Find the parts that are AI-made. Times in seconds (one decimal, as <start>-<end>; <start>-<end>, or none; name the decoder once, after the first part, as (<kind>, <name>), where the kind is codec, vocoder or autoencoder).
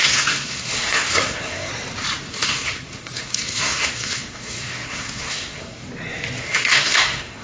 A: 0.0-1.7 (codec, SNAC); 2.3-5.8; 6.4-7.4